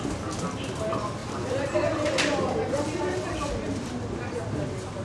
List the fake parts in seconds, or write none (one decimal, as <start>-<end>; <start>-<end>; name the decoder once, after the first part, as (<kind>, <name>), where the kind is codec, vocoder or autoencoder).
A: 1.2-3.9 (vocoder, BigVGAN v2)